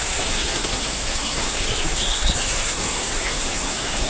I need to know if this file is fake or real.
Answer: fake